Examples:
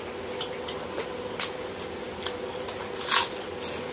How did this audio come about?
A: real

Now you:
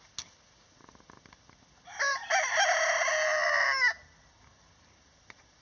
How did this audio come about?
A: real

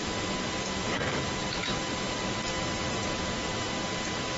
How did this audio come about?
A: real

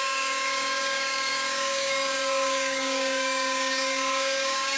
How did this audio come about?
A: fake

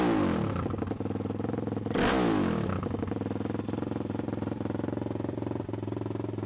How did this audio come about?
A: real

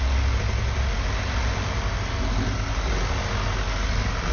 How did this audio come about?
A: real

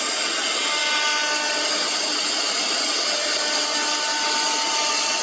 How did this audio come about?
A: real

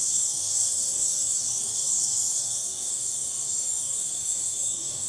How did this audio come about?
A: fake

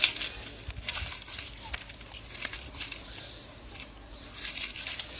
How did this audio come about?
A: real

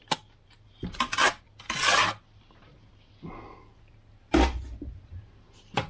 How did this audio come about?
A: real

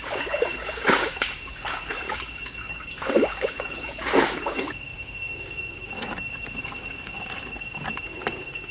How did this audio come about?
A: fake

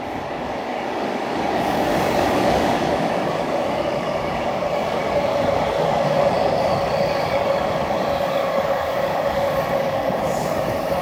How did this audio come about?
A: fake